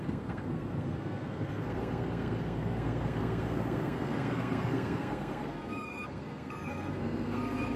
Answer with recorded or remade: remade